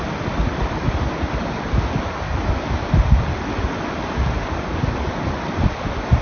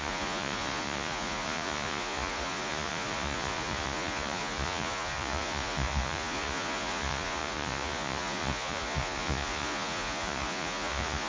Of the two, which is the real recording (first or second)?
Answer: first